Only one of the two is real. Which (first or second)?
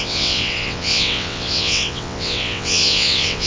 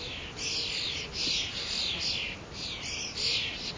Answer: second